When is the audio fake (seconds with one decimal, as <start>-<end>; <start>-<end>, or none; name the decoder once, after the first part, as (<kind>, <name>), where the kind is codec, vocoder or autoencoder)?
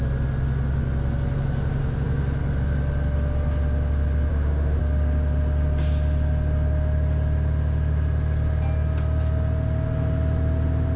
4.3-4.8 (autoencoder, DAC-VAE)